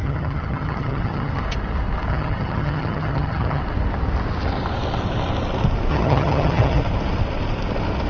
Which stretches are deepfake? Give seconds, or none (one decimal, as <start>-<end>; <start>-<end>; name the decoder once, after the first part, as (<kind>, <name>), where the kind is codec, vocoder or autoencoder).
0.0-1.4 (vocoder, HiFi-GAN); 2.1-3.6; 5.9-6.8